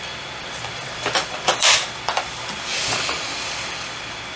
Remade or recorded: remade